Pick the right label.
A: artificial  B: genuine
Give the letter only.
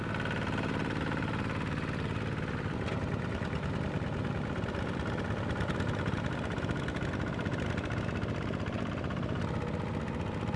B